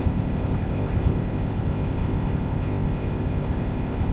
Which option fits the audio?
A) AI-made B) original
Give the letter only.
A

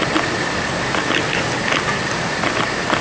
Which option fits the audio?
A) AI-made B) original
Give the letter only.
B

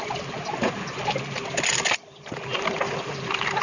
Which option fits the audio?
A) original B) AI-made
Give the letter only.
A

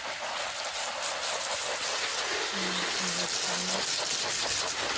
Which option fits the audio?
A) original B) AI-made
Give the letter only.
A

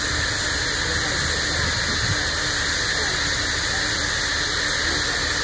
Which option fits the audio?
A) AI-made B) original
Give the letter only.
B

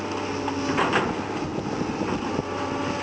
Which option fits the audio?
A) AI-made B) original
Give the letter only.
B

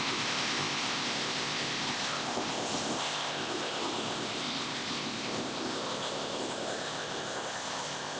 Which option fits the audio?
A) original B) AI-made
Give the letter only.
B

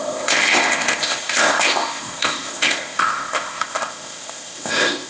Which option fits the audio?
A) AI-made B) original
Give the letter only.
A